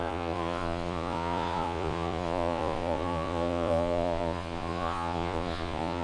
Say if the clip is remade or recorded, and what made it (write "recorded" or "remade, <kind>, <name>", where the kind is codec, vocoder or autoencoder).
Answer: remade, vocoder, Vocos